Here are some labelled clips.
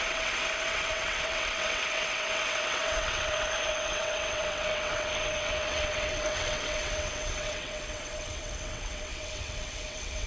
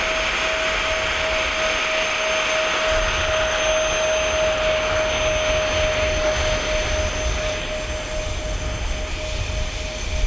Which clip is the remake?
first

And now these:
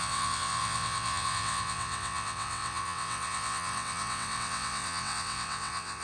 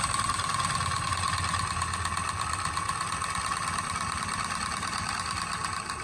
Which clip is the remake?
first